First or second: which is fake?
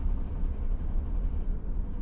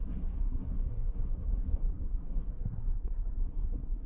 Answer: second